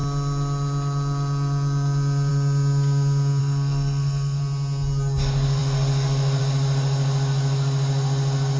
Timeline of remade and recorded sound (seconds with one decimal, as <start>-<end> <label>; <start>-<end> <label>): 0.0-3.4 recorded; 3.4-4.4 remade; 4.4-8.6 recorded